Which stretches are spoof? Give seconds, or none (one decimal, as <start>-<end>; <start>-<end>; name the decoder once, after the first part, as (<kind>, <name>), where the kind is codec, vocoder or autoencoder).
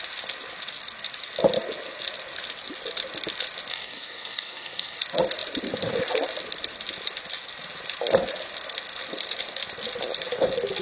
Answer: 3.7-5.0 (codec, DAC)